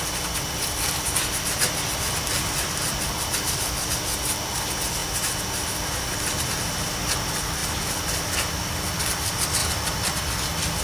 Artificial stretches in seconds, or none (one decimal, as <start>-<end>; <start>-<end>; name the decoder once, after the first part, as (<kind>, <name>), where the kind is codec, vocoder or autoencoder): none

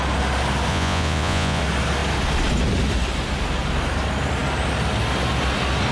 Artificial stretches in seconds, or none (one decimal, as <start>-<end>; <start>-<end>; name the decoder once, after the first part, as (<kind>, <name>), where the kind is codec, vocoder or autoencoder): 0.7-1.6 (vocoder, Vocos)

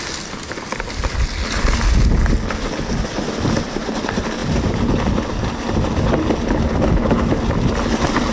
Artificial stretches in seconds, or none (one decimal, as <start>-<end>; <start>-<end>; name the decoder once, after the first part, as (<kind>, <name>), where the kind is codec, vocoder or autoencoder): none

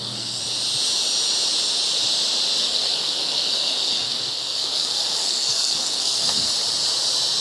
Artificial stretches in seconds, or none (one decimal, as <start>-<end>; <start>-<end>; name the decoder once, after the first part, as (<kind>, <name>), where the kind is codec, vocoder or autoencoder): 0.0-0.4 (codec, SNAC); 2.6-6.5

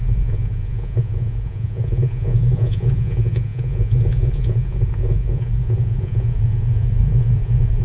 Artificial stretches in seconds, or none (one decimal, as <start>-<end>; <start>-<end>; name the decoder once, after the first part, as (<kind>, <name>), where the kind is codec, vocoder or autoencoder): 0.0-7.8 (vocoder, Vocos)

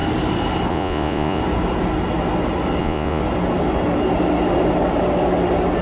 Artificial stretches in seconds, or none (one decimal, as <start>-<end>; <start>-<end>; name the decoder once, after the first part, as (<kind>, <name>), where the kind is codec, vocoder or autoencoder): 0.7-1.4 (vocoder, Vocos); 2.8-3.2

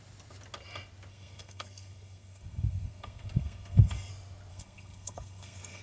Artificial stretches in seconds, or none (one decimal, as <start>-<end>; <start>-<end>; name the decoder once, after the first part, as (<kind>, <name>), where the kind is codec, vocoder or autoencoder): 1.1-4.1 (codec, SNAC); 4.5-5.8